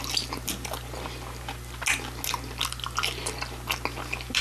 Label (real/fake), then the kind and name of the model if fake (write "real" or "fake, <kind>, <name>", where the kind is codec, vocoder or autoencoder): real